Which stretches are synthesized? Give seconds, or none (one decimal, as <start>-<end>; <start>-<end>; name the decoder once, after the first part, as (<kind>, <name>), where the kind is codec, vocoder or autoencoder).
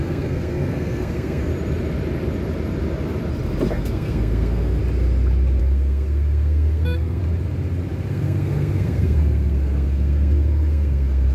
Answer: 0.0-1.5 (codec, SNAC); 3.7-4.8; 5.6-7.2; 8.1-11.3